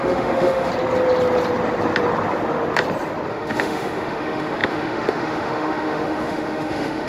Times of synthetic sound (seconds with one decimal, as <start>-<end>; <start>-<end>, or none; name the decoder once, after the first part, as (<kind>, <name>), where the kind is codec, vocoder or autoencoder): 0.0-0.7 (autoencoder, DAC-VAE); 3.3-7.1